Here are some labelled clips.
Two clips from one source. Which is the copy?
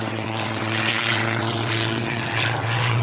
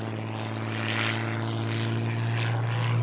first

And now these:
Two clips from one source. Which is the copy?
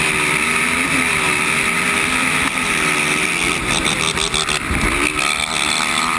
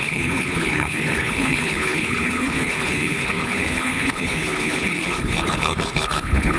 second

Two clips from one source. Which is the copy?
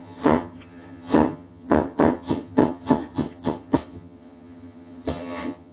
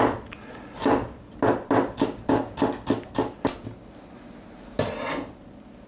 first